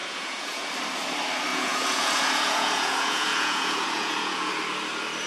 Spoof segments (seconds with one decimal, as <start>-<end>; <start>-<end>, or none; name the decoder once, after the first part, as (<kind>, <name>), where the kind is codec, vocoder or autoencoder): 0.0-0.7 (vocoder, Vocos); 1.5-4.5

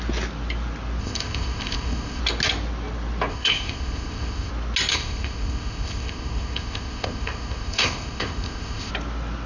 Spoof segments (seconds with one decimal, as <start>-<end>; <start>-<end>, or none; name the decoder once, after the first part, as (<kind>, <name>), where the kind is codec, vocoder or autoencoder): 1.0-2.2 (codec, ZipCodec); 3.3-4.5; 4.9-8.9

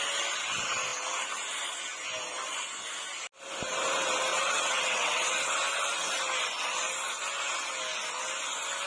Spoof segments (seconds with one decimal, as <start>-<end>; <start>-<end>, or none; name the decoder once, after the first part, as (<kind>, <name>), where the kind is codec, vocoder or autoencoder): 4.3-5.5 (vocoder, WaveNeXt)

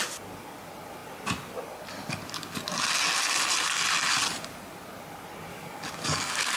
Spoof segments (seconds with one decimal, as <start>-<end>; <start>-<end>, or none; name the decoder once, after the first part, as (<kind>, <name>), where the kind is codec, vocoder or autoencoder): 5.5-6.6 (codec, DAC)